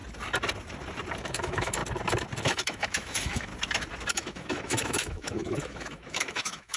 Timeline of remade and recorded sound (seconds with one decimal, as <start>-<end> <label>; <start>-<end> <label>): 0.0-1.2 recorded; 1.2-1.8 remade; 1.8-2.4 recorded; 2.4-3.5 remade; 3.5-4.1 recorded; 4.1-6.8 remade

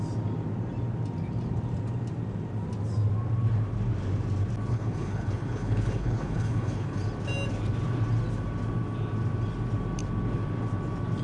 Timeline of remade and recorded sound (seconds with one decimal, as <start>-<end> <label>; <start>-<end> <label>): 0.0-4.7 recorded; 4.7-7.0 remade; 7.0-11.2 recorded

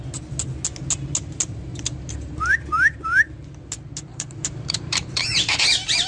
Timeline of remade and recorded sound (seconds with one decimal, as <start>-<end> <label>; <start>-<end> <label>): 0.0-1.7 recorded; 1.7-2.3 remade; 2.3-4.1 recorded; 4.1-5.6 remade; 5.6-6.1 recorded

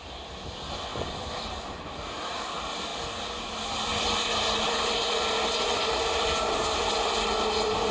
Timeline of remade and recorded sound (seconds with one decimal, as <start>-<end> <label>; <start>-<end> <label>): 0.0-7.9 recorded